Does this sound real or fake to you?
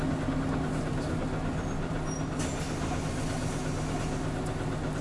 real